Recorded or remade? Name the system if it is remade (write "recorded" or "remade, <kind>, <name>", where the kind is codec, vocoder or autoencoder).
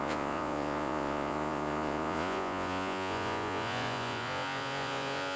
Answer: remade, vocoder, Vocos